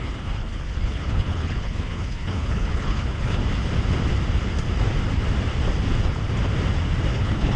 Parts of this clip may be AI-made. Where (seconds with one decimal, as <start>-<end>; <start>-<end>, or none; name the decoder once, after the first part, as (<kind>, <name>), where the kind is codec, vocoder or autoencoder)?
0.0-3.4 (codec, HILCodec); 7.1-7.6